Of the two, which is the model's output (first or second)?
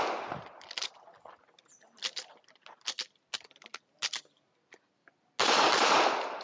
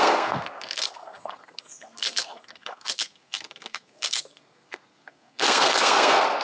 second